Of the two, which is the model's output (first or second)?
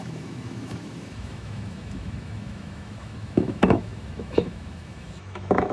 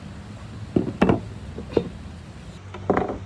first